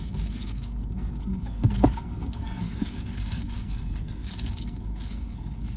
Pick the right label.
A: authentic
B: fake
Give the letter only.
B